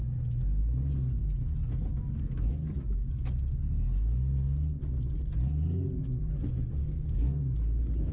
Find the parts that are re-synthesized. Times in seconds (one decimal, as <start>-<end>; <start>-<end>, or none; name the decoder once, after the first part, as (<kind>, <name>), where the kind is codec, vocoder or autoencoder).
6.8-7.4 (codec, SNAC)